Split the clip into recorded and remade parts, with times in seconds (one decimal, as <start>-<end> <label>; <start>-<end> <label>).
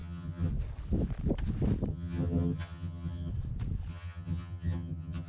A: 0.0-0.5 remade; 0.5-1.9 recorded; 1.9-3.3 remade; 3.3-3.9 recorded; 3.9-5.3 remade